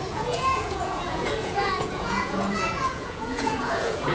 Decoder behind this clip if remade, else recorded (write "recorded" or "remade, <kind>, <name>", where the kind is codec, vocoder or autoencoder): remade, vocoder, Vocos